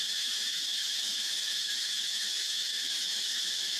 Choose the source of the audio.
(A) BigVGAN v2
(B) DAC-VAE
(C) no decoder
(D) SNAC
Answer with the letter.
B